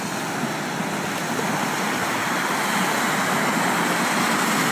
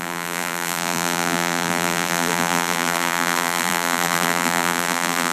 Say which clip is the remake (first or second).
second